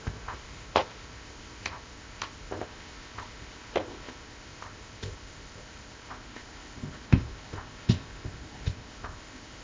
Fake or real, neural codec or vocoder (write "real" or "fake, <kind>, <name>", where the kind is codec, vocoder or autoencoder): fake, codec, ZipCodec